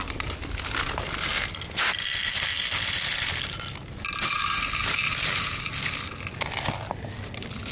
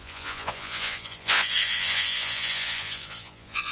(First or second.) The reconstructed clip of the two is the second